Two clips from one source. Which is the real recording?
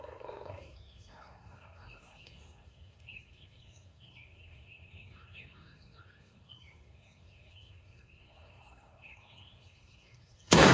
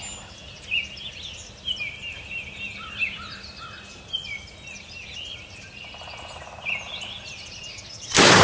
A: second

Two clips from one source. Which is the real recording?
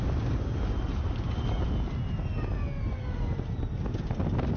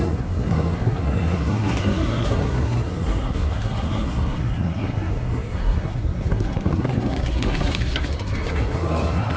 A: first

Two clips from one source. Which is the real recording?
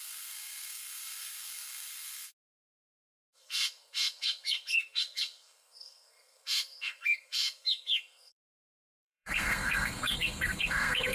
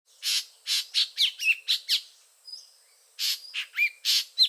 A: second